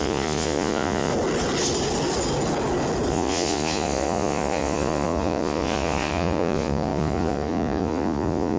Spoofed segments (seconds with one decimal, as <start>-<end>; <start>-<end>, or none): 0.0-1.1; 3.1-8.6